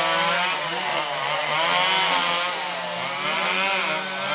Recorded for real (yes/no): yes